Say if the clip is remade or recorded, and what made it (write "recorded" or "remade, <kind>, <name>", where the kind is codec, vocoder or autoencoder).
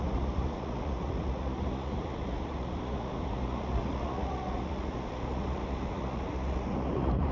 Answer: remade, vocoder, Vocos